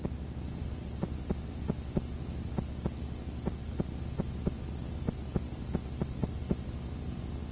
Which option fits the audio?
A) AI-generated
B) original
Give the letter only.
B